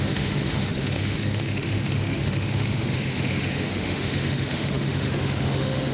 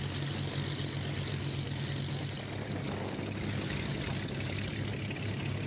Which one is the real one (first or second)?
second